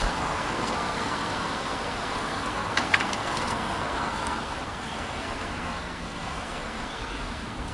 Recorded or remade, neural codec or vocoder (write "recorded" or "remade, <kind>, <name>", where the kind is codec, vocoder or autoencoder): remade, codec, SNAC